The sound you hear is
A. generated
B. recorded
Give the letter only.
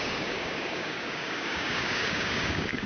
A